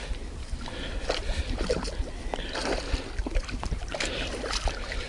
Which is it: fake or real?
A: real